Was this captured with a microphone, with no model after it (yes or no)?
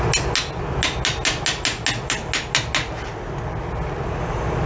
yes